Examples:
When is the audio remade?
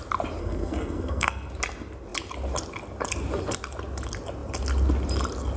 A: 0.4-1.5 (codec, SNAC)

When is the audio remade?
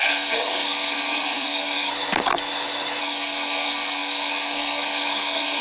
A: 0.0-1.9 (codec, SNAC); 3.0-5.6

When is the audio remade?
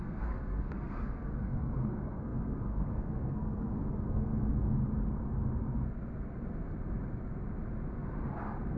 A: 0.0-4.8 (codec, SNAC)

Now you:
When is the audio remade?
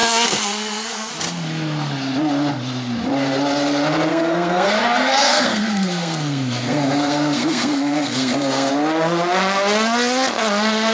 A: 0.0-1.1 (codec, SNAC); 4.1-8.7